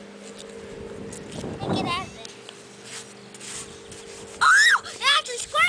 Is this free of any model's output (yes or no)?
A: yes